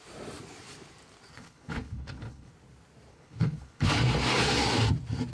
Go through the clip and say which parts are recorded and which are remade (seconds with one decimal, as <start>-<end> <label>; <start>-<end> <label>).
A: 0.0-1.3 recorded; 1.3-2.5 remade; 2.5-3.1 recorded; 3.1-3.9 remade; 3.9-5.3 recorded